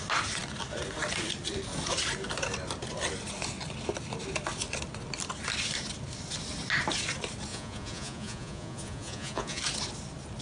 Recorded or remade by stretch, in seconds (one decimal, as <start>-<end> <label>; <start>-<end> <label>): 0.0-7.5 recorded; 7.5-9.6 remade; 9.6-10.4 recorded